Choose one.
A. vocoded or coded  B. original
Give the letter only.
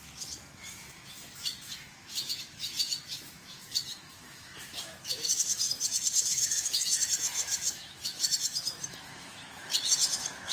A